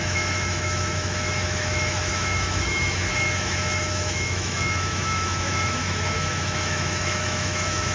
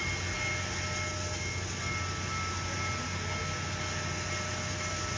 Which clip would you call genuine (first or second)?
second